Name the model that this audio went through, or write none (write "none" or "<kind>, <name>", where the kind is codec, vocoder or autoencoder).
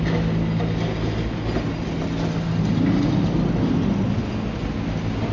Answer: none